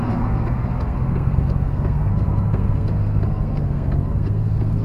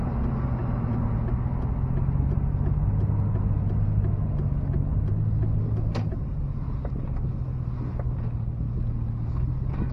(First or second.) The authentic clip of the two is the second